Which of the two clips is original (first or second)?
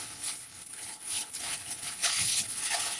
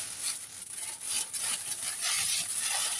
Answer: second